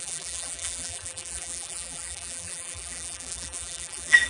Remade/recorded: remade